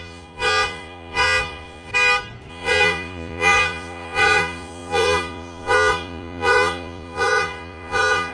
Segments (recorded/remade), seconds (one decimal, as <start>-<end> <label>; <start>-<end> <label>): 0.0-1.9 remade; 1.9-2.5 recorded; 2.5-8.3 remade